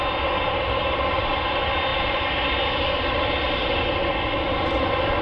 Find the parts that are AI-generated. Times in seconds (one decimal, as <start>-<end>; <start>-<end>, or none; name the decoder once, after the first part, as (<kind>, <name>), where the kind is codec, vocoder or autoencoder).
none